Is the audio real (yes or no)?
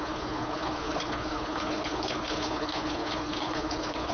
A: no